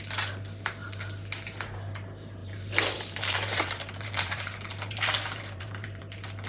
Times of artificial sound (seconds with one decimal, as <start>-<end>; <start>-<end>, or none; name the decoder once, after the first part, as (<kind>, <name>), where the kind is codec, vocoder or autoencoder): 2.4-6.0 (vocoder, BigVGAN v2)